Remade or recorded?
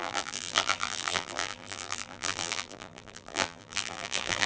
remade